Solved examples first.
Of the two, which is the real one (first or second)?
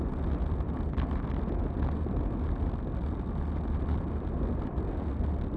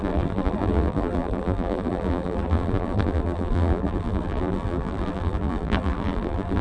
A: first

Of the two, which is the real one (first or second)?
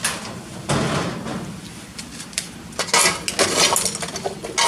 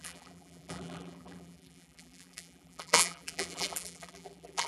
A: first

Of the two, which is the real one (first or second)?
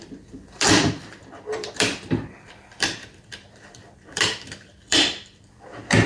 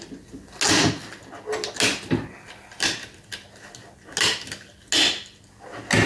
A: second